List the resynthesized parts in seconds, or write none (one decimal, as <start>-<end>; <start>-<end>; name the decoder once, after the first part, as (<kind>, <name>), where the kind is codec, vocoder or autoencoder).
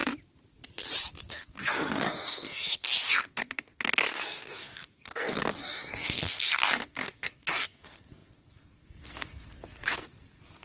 1.3-10.6 (codec, SNAC)